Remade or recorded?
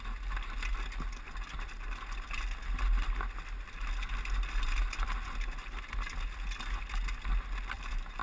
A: recorded